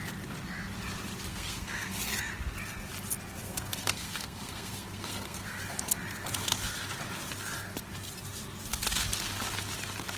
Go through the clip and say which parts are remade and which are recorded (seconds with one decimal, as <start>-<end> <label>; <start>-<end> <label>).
0.0-1.3 recorded; 1.3-2.0 remade; 2.0-3.4 recorded; 3.4-5.6 remade; 5.6-10.2 recorded